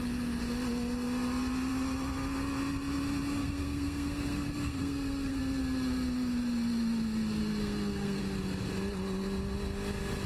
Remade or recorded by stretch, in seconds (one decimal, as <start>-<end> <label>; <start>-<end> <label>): 0.0-3.4 recorded; 3.4-5.4 remade; 5.4-7.4 recorded; 7.4-8.2 remade; 8.2-10.3 recorded